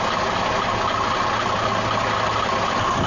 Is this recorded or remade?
recorded